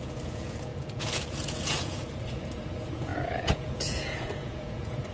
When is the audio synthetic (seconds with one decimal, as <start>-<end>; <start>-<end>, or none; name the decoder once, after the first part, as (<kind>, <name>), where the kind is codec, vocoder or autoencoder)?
0.0-5.1 (vocoder, Vocos)